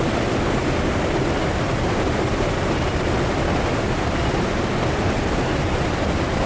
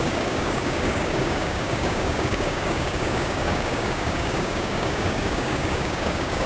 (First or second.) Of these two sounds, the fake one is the second